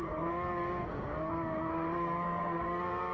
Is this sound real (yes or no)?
no